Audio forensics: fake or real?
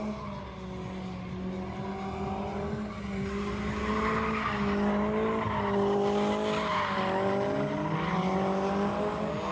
real